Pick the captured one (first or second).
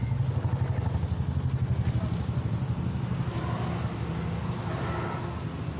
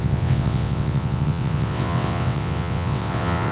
first